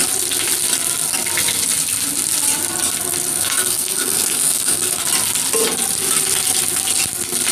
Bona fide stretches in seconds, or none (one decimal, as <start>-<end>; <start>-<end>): 0.0-3.3; 5.0-7.5